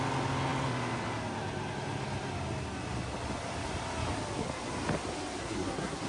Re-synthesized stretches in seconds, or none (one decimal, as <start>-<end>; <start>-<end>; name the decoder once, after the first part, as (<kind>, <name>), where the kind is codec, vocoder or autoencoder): 5.4-6.1 (codec, SNAC)